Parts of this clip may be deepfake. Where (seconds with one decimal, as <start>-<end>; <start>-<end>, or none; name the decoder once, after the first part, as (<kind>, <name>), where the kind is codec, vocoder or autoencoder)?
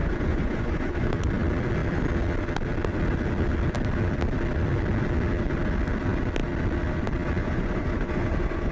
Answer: 0.0-1.1 (vocoder, Vocos); 7.4-8.7